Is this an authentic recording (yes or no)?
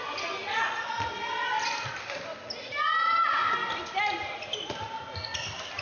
yes